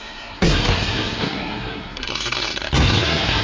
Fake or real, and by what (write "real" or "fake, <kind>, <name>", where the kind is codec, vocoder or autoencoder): fake, codec, SNAC